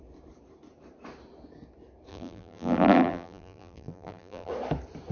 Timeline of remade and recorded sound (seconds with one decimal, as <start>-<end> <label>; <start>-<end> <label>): 0.0-2.1 recorded; 2.1-4.5 remade; 4.5-5.1 recorded